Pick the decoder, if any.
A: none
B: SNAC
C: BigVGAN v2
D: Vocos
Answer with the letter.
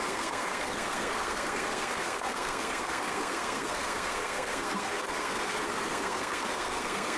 B